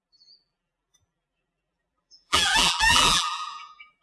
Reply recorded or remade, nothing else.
remade